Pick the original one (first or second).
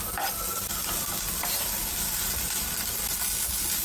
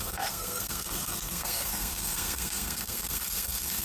first